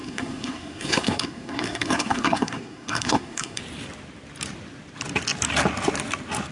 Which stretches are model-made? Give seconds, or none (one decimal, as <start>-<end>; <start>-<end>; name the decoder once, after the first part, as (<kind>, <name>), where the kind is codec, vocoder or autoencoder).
0.0-3.6 (codec, SNAC)